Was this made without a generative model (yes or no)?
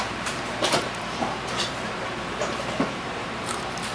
no